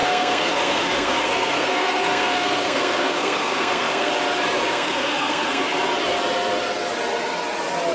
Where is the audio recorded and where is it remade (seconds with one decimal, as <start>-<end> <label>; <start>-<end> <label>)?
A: 0.0-4.1 remade; 4.1-4.7 recorded; 4.7-5.6 remade; 5.6-7.9 recorded